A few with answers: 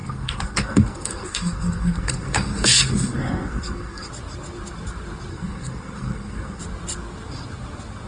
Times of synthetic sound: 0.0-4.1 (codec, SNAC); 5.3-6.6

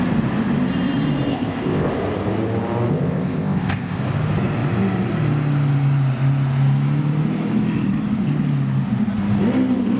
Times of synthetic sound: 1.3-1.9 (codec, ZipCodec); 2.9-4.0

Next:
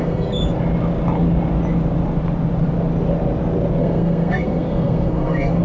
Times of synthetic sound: 0.0-0.4 (codec, SNAC); 3.8-5.6

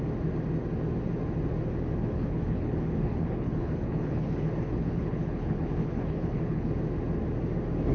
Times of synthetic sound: 2.0-6.7 (codec, HILCodec)